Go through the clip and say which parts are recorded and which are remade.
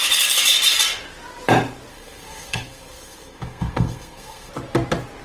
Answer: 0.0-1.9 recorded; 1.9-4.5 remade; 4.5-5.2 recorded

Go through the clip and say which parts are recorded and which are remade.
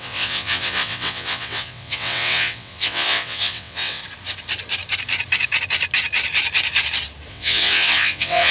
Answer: 0.0-4.0 remade; 4.0-7.3 recorded; 7.3-8.5 remade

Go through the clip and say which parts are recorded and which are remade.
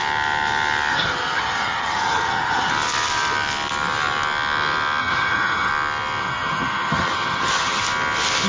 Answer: 0.0-0.9 recorded; 0.9-2.7 remade; 2.7-5.0 recorded; 5.0-5.7 remade; 5.7-6.2 recorded; 6.2-7.8 remade; 7.8-8.5 recorded